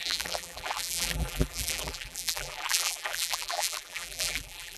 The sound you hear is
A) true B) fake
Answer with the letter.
B